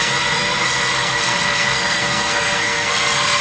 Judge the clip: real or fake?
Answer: fake